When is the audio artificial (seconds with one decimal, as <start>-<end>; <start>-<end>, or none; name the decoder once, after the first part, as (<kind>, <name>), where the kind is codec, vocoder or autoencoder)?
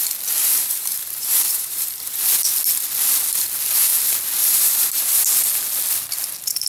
0.4-2.2 (vocoder, BigVGAN v2); 4.4-5.2